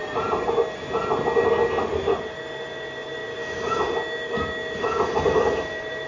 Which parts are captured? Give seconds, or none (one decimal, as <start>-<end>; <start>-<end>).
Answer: 0.0-6.1